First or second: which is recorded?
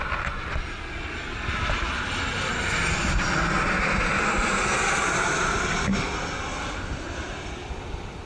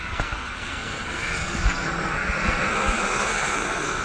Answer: first